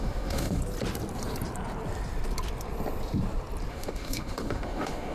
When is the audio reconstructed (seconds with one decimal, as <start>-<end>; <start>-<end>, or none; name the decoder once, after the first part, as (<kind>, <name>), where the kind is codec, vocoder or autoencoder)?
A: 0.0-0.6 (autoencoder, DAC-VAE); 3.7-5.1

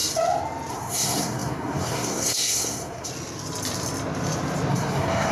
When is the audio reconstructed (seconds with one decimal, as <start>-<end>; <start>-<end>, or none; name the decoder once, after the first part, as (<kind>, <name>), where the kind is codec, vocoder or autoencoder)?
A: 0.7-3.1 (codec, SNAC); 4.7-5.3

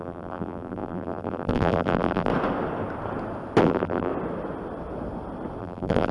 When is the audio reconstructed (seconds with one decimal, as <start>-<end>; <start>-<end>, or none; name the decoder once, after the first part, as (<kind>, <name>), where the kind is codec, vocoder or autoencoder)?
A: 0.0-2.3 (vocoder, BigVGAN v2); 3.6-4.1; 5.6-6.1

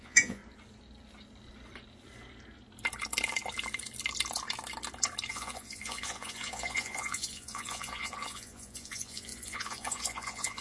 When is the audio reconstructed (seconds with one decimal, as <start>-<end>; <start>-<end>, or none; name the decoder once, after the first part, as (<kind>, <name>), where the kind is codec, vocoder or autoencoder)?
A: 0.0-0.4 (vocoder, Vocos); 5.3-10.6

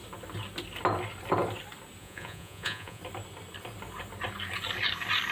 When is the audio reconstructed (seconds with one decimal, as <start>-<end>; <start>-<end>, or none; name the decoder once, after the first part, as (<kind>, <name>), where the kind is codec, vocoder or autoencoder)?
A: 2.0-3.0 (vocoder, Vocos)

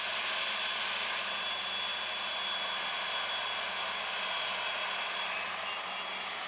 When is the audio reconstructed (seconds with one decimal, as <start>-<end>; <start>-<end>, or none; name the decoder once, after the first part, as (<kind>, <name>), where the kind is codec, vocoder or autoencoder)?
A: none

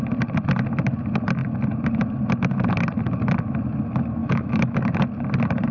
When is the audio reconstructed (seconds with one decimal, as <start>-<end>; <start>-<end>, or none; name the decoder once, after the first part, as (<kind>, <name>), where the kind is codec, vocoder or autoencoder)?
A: 4.2-4.8 (autoencoder, DAC-VAE)